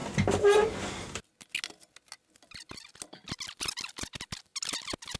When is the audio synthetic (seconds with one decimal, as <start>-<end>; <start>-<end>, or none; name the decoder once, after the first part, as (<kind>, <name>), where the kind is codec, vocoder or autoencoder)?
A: none